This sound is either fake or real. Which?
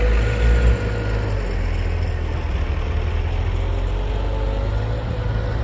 real